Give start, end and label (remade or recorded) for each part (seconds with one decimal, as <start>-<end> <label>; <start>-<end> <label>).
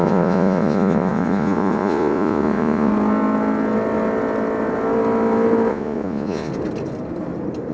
0.0-2.9 remade; 2.9-5.7 recorded; 5.7-6.5 remade; 6.5-7.7 recorded